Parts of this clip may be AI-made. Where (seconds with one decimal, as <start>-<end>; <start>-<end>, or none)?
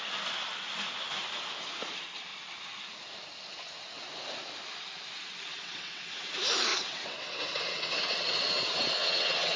5.5-6.3; 6.7-9.6